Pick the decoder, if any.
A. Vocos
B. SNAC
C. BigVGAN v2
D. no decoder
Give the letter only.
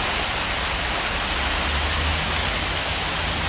D